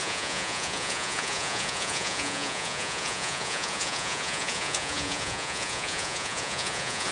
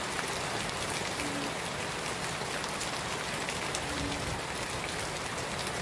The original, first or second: second